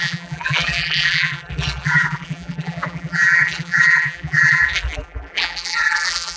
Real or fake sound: fake